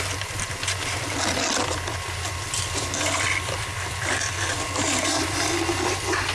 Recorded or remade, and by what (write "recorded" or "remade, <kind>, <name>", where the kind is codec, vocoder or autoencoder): recorded